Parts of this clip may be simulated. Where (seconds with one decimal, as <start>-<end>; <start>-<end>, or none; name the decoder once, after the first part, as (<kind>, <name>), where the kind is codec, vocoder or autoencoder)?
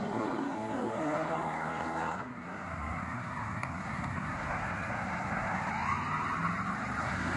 0.0-5.7 (codec, SNAC); 7.0-7.4